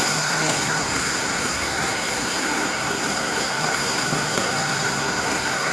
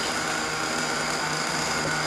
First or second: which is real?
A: second